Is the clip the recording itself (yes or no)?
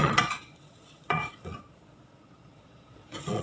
no